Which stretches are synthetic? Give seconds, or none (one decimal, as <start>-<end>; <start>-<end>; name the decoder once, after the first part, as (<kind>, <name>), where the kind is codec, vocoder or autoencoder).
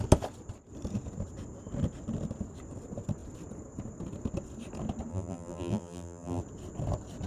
5.1-6.4 (vocoder, BigVGAN v2)